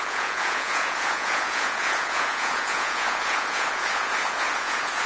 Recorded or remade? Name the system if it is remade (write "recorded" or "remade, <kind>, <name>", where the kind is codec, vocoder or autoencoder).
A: remade, vocoder, Vocos